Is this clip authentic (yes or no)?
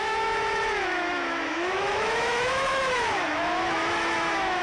no